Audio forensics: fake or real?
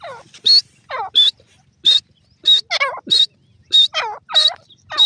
real